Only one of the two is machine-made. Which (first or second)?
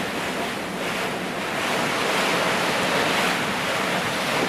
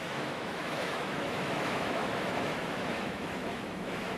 second